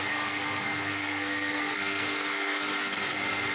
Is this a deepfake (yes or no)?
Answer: yes